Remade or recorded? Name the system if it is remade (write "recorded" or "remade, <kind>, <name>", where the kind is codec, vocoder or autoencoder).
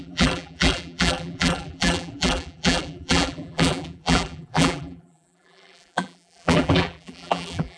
remade, vocoder, BigVGAN v2